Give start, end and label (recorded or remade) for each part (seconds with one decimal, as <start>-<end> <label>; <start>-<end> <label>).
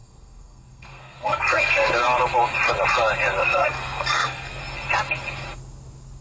0.0-1.9 remade; 1.9-3.4 recorded; 3.4-4.6 remade; 4.6-6.2 recorded